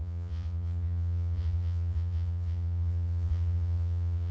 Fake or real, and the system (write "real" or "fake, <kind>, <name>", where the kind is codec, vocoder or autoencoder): fake, vocoder, Vocos